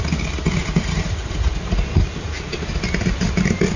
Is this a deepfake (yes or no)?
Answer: no